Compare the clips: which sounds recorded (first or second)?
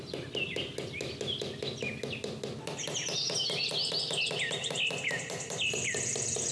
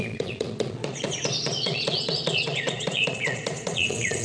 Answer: first